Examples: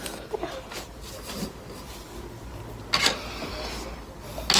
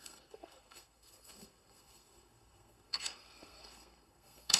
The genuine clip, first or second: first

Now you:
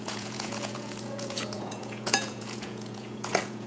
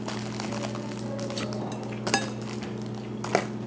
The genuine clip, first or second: second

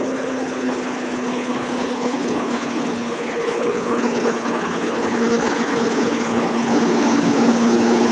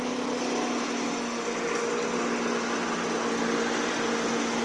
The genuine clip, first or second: second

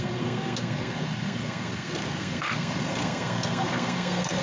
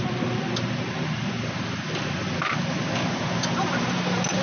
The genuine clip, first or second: second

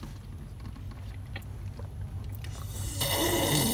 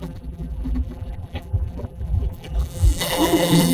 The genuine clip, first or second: first